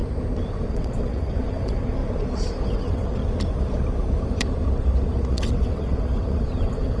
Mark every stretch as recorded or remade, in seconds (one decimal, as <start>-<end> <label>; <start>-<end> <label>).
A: 0.0-0.7 recorded; 0.7-2.0 remade; 2.0-2.7 recorded; 2.7-3.2 remade; 3.2-5.3 recorded; 5.3-7.0 remade